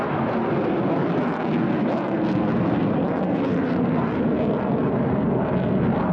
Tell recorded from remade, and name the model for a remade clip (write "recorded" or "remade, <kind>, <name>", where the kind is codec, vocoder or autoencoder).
recorded